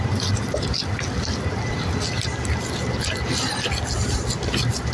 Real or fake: fake